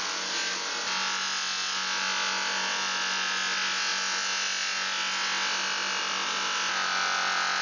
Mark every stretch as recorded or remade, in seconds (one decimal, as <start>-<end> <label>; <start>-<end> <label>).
0.0-7.6 recorded